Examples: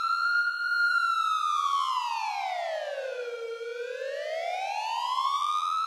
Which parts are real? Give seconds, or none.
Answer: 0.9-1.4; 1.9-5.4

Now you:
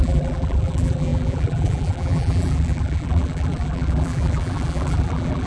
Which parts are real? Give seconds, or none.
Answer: none

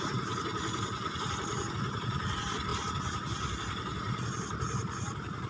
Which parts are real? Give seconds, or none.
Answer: none

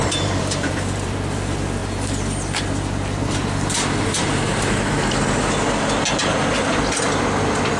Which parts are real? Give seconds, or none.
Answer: 1.8-6.1

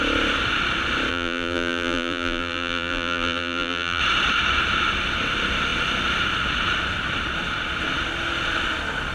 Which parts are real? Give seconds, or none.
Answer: 0.0-1.1; 4.0-9.1

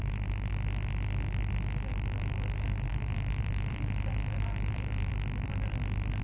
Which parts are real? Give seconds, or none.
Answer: 0.5-1.9; 5.7-6.2

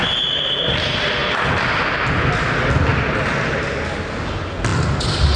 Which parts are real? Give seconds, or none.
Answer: 0.0-5.4

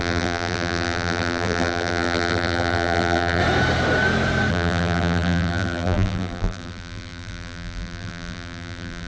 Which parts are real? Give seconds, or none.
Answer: 3.4-4.5